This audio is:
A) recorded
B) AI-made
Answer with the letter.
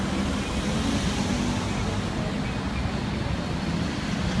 A